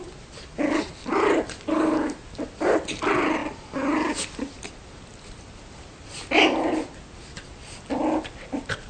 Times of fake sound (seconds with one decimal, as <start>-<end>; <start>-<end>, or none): none